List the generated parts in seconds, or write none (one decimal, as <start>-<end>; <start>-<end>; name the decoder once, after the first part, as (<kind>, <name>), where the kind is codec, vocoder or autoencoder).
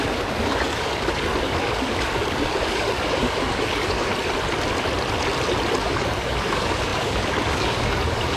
0.0-4.1 (codec, DAC); 5.8-8.4